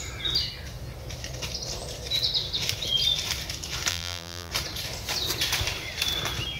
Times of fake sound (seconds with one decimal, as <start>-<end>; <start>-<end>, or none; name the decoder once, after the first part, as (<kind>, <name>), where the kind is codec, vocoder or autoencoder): 3.9-4.5 (vocoder, BigVGAN v2)